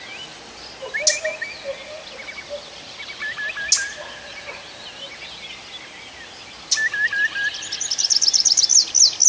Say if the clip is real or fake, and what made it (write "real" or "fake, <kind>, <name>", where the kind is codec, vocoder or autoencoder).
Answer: real